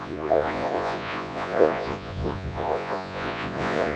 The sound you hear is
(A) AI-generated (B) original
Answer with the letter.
A